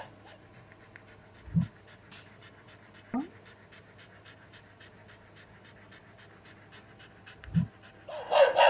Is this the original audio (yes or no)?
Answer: yes